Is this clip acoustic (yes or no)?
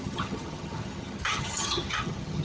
no